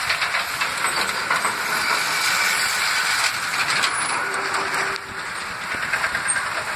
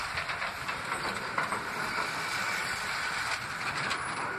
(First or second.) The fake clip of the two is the second